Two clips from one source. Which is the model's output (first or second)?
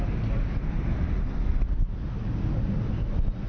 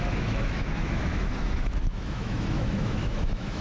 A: second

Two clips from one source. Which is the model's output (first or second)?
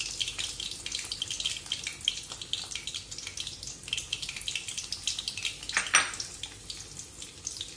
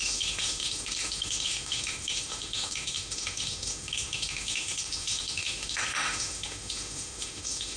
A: second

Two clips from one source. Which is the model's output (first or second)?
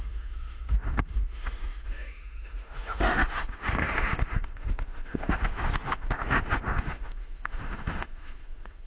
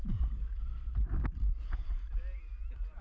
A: first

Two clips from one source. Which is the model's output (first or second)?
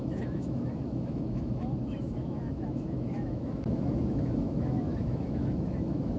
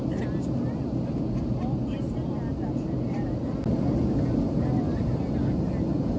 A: first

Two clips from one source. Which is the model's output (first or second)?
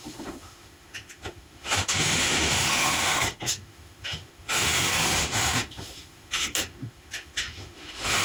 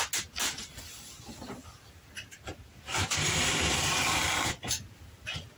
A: first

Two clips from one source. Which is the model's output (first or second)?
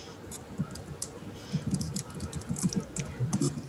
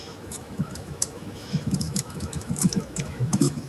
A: second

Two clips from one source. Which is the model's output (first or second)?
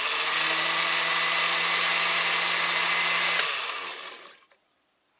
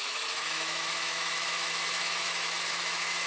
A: second